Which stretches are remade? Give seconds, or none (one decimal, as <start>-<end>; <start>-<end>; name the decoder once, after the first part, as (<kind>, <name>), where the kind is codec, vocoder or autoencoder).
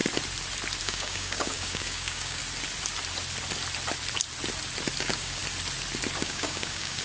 0.8-2.4 (codec, DAC); 5.0-5.4; 6.2-7.0